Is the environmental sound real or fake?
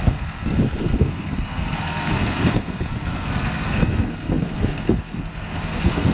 fake